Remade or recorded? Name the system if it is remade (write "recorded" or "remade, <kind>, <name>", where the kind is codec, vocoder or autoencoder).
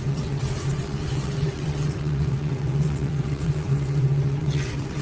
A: remade, vocoder, WaveNeXt